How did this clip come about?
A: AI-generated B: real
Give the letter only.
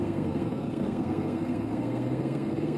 A